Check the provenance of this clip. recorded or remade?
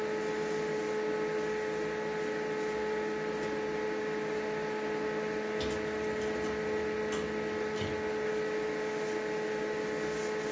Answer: recorded